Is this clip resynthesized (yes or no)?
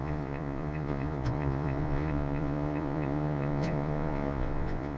yes